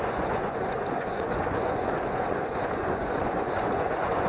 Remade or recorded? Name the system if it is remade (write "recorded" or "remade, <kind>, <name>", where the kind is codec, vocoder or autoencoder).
remade, vocoder, Vocos